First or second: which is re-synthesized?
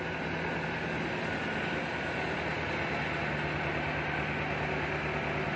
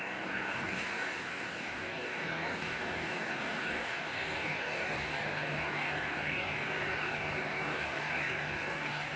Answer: second